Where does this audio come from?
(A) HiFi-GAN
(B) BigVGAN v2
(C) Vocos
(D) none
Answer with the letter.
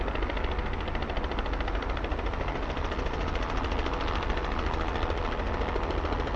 D